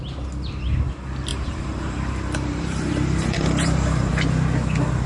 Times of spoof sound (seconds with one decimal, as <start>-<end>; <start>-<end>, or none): 1.3-4.1